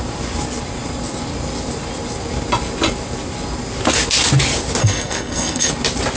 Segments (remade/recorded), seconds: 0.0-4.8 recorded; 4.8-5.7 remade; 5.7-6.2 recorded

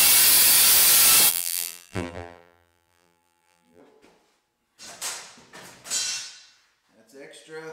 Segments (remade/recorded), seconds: 0.0-1.3 recorded; 1.3-3.8 remade; 3.8-7.7 recorded

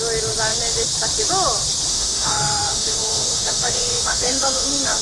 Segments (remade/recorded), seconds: 0.0-1.9 recorded; 1.9-5.0 remade

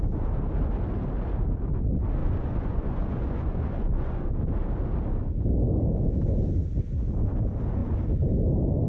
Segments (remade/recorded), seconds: 0.0-2.2 recorded; 2.2-4.3 remade; 4.3-8.9 recorded

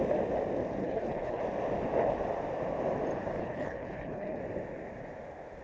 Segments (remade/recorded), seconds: 0.0-0.8 recorded; 0.8-1.4 remade; 1.4-3.4 recorded; 3.4-4.4 remade; 4.4-5.6 recorded